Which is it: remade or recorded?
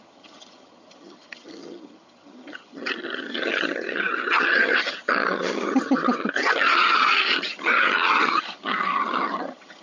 remade